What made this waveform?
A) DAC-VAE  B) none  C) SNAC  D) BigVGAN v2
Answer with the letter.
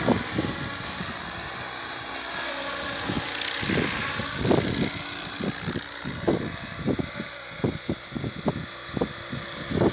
B